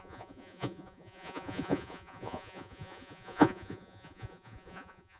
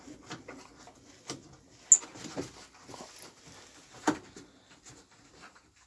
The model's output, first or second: first